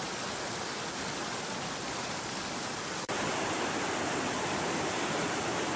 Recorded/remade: recorded